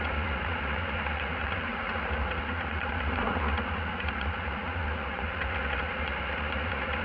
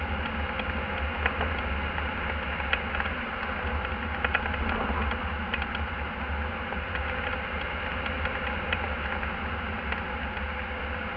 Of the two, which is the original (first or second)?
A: second